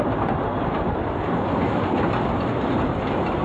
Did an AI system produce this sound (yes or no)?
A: no